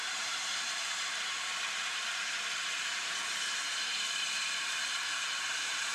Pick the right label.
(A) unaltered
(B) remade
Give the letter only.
B